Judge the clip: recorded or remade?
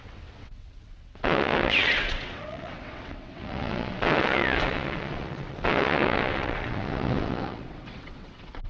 remade